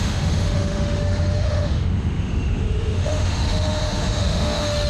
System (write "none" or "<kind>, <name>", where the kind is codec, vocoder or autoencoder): autoencoder, DAC-VAE